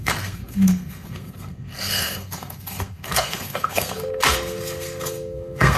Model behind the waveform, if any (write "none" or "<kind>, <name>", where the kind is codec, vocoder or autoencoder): codec, SNAC